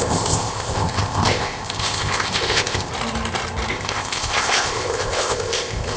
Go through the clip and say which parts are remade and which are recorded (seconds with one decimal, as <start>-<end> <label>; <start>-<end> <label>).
0.0-2.9 remade; 2.9-3.7 recorded; 3.7-6.0 remade